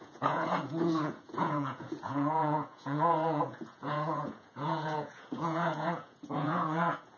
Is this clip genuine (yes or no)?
no